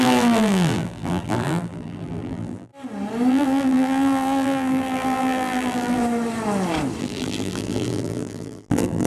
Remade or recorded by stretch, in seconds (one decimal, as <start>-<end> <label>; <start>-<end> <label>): 0.0-2.7 remade; 2.7-3.3 recorded; 3.3-6.0 remade; 6.0-7.0 recorded; 7.0-9.1 remade